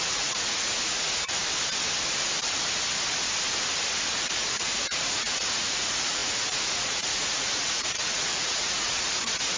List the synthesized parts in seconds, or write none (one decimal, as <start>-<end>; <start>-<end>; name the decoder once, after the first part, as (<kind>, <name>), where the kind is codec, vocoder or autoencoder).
0.0-1.4 (vocoder, Vocos); 4.1-9.6